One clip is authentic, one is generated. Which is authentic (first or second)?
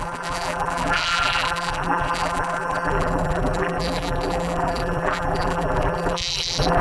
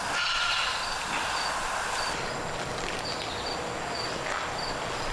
second